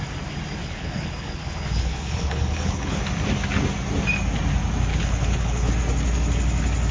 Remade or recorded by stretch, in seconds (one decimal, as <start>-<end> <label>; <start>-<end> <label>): 0.0-0.6 recorded; 0.6-3.0 remade; 3.0-4.9 recorded; 4.9-5.7 remade; 5.7-6.9 recorded